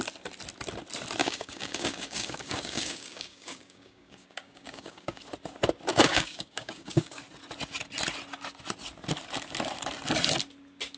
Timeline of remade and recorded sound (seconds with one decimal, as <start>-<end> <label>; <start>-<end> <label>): 0.0-1.2 recorded; 1.2-5.2 remade; 5.2-5.9 recorded; 5.9-7.2 remade; 7.2-11.0 recorded